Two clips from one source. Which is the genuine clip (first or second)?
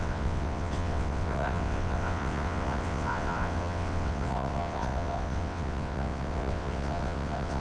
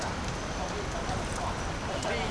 second